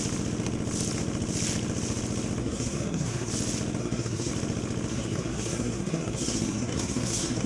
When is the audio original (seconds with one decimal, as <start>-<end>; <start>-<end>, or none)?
0.0-2.4; 3.3-3.8; 4.3-4.9